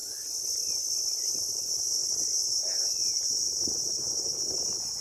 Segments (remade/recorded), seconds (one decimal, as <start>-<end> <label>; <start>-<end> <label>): 0.0-5.0 recorded